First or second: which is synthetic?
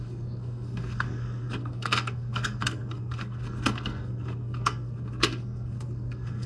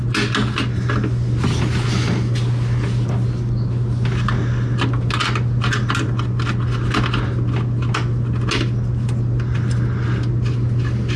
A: first